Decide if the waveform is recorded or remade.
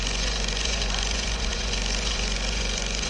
remade